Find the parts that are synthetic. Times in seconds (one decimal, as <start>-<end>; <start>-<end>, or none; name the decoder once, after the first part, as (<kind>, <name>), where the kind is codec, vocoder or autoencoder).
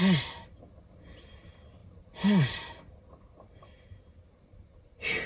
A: none